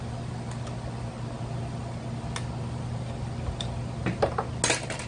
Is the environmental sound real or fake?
real